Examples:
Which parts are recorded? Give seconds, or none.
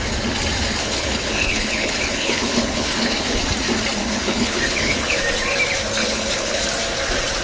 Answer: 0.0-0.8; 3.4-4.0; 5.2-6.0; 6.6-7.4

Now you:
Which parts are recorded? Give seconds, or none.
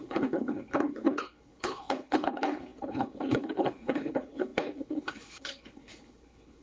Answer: none